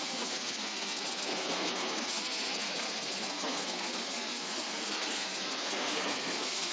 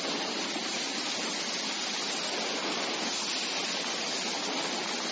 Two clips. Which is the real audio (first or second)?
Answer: second